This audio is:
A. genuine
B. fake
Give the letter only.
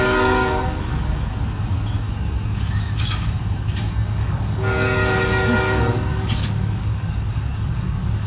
B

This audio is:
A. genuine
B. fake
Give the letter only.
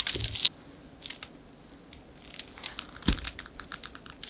A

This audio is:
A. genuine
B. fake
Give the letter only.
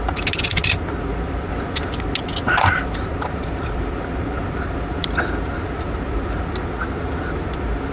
A